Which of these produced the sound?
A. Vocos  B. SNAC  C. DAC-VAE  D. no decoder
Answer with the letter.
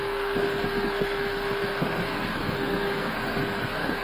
B